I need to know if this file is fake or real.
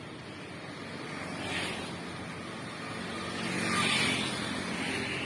real